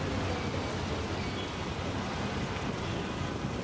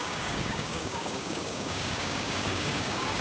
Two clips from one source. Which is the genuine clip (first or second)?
first